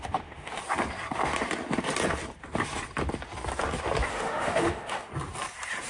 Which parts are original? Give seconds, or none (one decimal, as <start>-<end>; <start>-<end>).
0.6-4.1; 5.1-5.9